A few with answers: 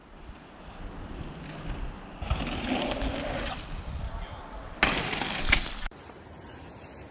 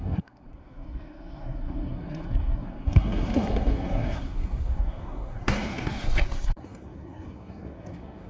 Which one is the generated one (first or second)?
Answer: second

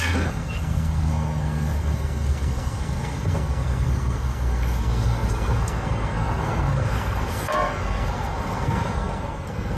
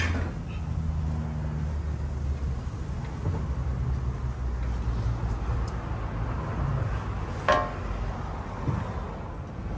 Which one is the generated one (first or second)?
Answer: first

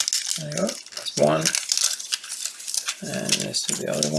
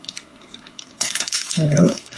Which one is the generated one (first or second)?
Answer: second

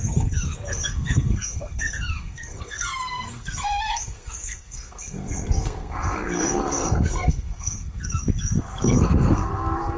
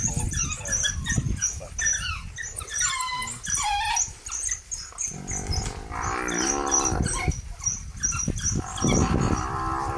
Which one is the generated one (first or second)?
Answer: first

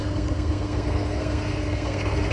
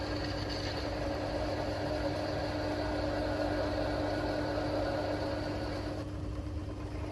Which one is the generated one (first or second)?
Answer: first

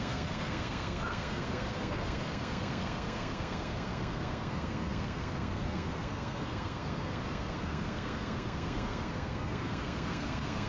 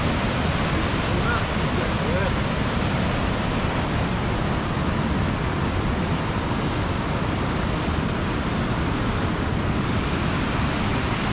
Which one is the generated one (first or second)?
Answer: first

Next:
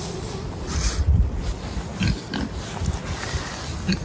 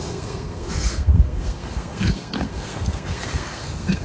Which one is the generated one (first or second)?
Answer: second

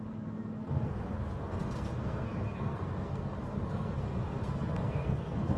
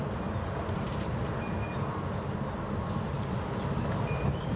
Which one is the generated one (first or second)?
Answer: first